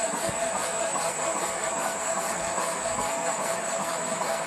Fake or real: fake